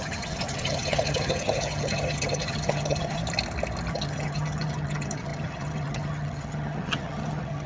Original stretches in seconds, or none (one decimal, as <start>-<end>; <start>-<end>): 3.2-3.9